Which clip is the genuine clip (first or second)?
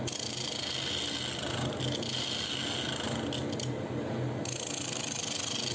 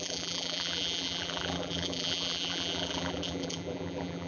first